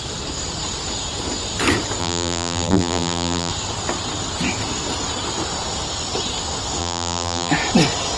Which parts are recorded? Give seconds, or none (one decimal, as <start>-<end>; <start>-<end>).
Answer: 0.0-2.0; 3.5-6.8; 7.5-8.2